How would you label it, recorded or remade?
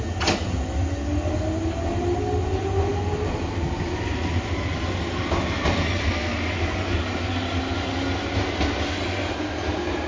recorded